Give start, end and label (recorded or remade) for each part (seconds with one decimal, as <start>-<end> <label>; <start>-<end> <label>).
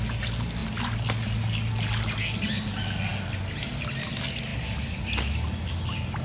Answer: 0.0-6.2 recorded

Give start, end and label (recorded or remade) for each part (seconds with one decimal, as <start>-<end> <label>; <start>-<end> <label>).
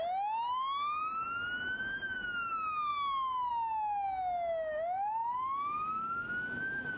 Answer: 0.0-7.0 recorded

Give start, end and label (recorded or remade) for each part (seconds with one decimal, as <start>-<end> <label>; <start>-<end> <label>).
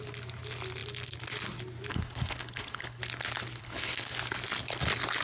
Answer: 0.0-1.9 recorded; 1.9-3.0 remade; 3.0-3.6 recorded; 3.6-4.1 remade; 4.1-5.2 recorded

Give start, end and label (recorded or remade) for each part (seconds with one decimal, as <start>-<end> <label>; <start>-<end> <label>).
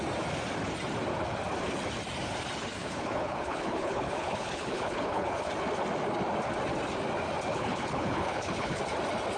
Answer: 0.0-2.8 recorded; 2.8-5.5 remade; 5.5-7.5 recorded; 7.5-8.8 remade; 8.8-9.4 recorded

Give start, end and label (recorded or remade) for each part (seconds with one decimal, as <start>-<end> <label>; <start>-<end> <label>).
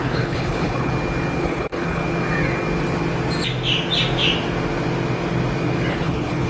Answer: 0.0-0.9 remade; 0.9-1.4 recorded; 1.4-2.0 remade; 2.0-5.9 recorded; 5.9-6.5 remade